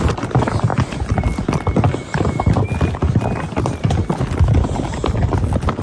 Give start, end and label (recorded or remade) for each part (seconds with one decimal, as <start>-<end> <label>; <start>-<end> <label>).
0.0-5.8 recorded